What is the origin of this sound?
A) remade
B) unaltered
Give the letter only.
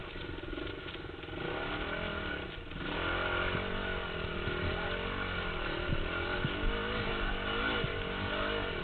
B